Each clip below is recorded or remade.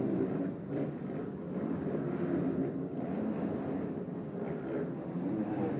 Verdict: recorded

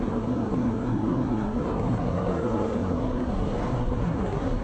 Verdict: remade